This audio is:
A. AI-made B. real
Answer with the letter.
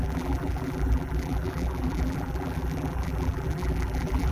A